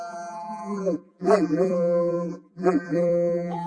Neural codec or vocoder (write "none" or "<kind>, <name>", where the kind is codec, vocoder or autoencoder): vocoder, BigVGAN v2